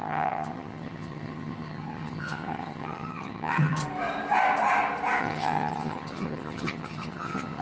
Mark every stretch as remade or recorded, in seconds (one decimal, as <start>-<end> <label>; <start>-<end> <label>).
0.0-3.8 remade; 3.8-5.2 recorded; 5.2-7.6 remade